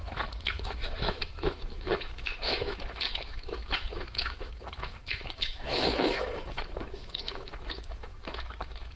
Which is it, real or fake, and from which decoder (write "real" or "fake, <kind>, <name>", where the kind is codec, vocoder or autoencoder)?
fake, autoencoder, DAC-VAE